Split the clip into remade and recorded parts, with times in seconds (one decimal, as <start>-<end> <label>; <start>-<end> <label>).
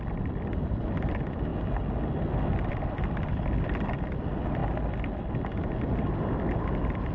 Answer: 0.0-1.5 remade; 1.5-2.9 recorded; 2.9-4.6 remade; 4.6-6.2 recorded; 6.2-7.1 remade